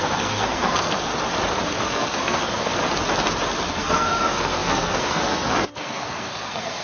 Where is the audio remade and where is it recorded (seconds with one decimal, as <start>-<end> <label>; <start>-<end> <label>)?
0.0-1.1 remade; 1.1-1.8 recorded; 1.8-2.8 remade; 2.8-3.7 recorded; 3.7-6.8 remade